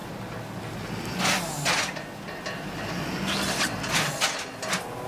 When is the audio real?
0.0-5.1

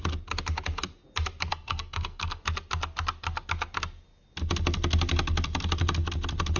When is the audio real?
0.0-1.5; 2.4-6.6

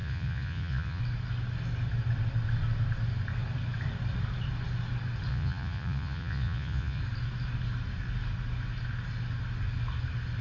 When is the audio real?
1.0-5.3; 7.0-10.4

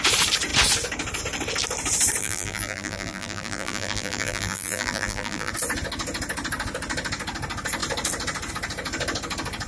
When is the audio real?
0.0-2.2; 5.5-9.7

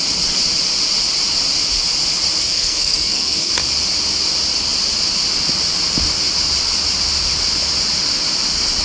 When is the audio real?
0.0-2.4; 3.5-8.8

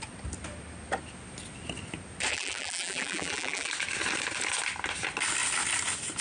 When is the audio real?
0.0-2.3; 3.7-6.2

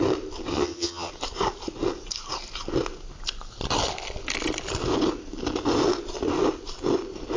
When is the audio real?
0.0-0.5; 1.1-7.4

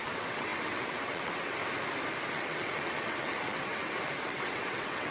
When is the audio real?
1.6-2.3